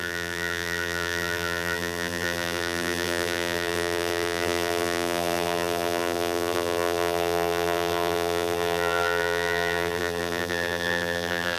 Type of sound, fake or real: fake